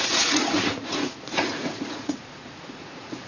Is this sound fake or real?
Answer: fake